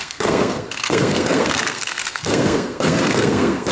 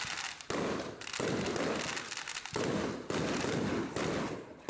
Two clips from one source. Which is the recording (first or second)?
second